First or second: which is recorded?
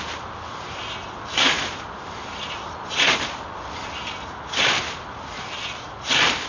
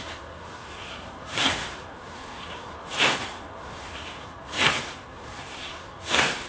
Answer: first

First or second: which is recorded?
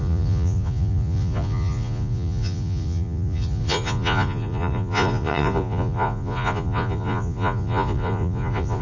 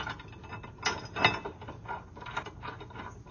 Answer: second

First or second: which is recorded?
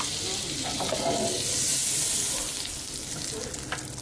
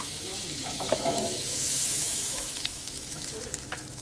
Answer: first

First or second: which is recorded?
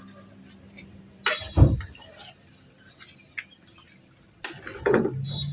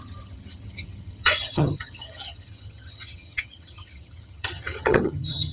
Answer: first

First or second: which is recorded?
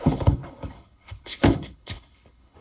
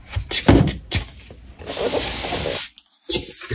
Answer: second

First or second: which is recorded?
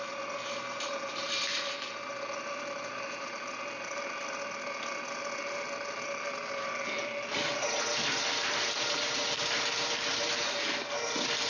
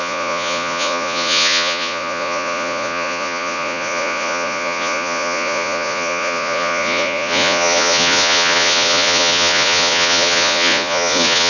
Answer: first